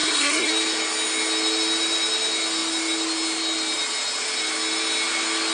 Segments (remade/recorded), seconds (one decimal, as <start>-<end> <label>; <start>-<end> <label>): 0.0-0.5 remade; 0.5-5.5 recorded